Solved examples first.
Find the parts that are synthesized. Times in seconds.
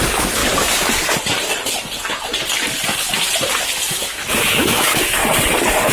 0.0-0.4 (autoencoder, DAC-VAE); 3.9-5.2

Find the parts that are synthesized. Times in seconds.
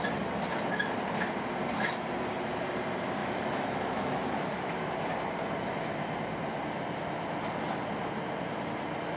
3.2-4.2 (autoencoder, DAC-VAE)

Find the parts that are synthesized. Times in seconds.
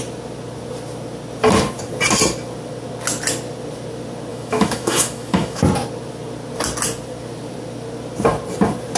4.3-5.6 (autoencoder, DAC-VAE)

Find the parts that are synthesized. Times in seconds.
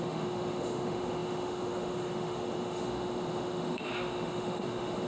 0.0-5.1 (autoencoder, DAC-VAE)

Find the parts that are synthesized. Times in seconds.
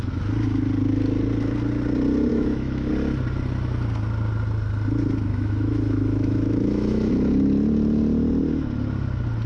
2.3-2.9 (autoencoder, DAC-VAE); 5.3-7.1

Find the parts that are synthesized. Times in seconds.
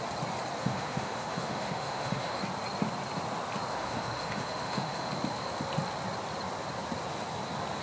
0.6-2.4 (autoencoder, DAC-VAE); 3.7-5.1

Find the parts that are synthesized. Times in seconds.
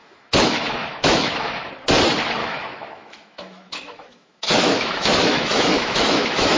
0.0-1.7 (autoencoder, DAC-VAE); 2.4-6.6